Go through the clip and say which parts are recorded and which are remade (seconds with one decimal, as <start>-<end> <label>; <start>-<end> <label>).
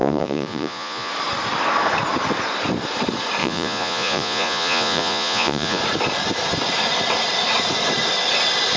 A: 0.0-1.1 remade; 1.1-3.4 recorded; 3.4-5.8 remade; 5.8-8.8 recorded